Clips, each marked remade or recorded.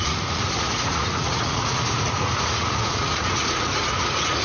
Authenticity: remade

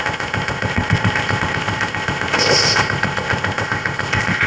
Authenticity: remade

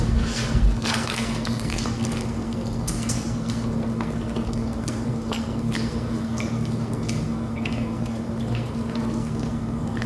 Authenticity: remade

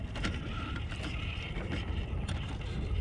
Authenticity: recorded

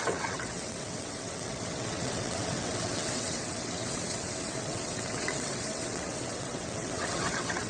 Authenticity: remade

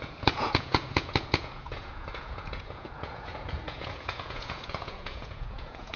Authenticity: remade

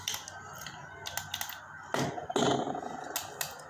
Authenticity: recorded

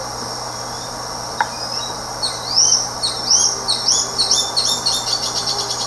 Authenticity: recorded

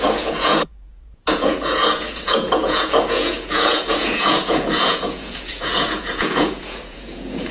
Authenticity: remade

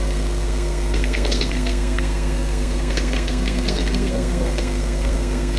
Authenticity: remade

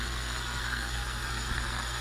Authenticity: remade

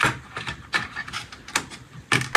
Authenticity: recorded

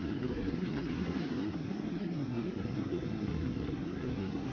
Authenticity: remade